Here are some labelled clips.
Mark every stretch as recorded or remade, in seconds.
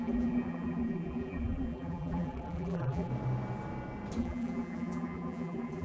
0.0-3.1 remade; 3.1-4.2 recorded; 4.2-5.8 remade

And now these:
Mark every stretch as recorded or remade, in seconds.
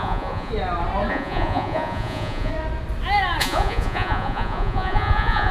0.0-0.5 remade; 0.5-1.1 recorded; 1.1-2.5 remade; 2.5-3.4 recorded; 3.4-5.5 remade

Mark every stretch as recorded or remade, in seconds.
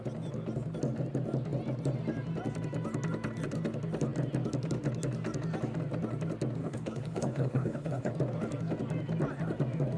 0.0-6.6 recorded; 6.6-8.1 remade; 8.1-10.0 recorded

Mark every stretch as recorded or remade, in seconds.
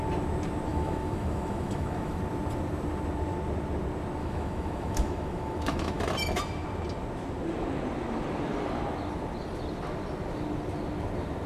0.0-0.7 recorded; 0.7-2.2 remade; 2.2-4.2 recorded; 4.2-6.0 remade; 6.0-11.5 recorded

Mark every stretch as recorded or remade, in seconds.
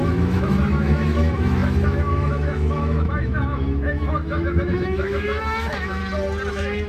0.0-6.0 remade; 6.0-6.5 recorded; 6.5-6.9 remade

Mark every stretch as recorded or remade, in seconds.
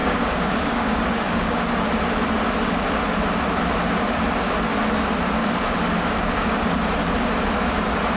0.0-1.8 remade; 1.8-5.4 recorded; 5.4-6.6 remade; 6.6-8.2 recorded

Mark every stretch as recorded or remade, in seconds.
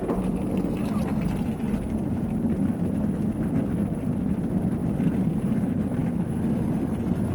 0.0-6.0 remade; 6.0-6.6 recorded; 6.6-7.3 remade